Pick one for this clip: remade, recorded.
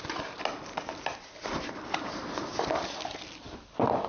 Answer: recorded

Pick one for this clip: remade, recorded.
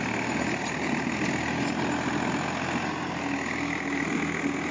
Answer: recorded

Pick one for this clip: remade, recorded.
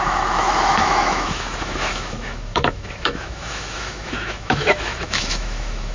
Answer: remade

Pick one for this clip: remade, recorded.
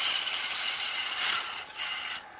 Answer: recorded